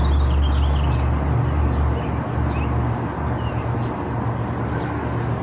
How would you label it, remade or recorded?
recorded